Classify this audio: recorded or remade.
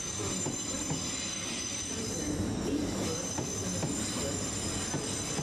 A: recorded